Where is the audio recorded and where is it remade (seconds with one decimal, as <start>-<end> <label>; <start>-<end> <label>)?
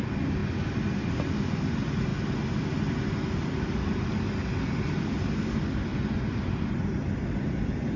0.0-8.0 recorded